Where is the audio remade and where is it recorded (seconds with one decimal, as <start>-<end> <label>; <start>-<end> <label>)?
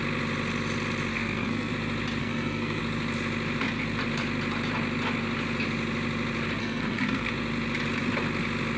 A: 0.0-1.1 recorded; 1.1-1.7 remade; 1.7-2.2 recorded; 2.2-2.8 remade; 2.8-6.6 recorded; 6.6-7.3 remade; 7.3-8.8 recorded